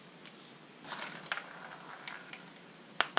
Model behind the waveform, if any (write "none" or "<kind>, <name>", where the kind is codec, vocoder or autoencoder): none